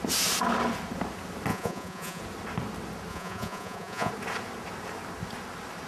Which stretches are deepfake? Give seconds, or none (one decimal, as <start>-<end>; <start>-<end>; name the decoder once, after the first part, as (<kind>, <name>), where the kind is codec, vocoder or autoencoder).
1.5-2.2 (vocoder, Vocos); 3.1-4.1